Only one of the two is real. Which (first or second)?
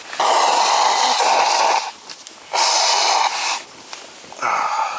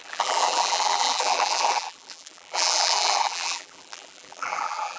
first